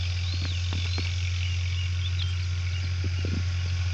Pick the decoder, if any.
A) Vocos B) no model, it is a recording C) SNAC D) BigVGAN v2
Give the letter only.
B